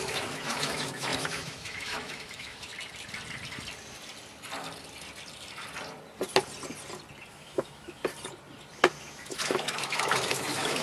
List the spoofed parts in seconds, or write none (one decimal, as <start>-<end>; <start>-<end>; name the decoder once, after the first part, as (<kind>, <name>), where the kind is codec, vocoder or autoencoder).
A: 0.0-2.7 (autoencoder, DAC-VAE); 7.3-8.0; 9.1-10.8